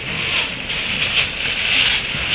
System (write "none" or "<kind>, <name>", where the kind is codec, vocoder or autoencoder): none